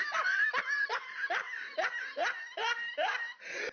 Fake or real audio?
fake